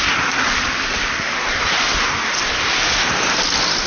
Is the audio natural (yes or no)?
yes